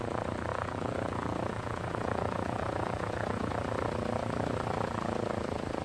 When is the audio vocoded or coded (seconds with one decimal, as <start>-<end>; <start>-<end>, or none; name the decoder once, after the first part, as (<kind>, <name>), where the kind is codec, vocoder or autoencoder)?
0.5-3.5 (vocoder, Vocos)